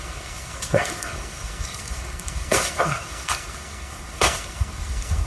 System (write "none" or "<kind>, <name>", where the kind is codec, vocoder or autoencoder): codec, SNAC